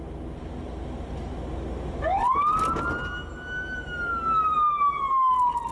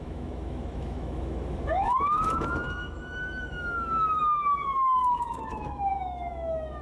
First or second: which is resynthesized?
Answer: second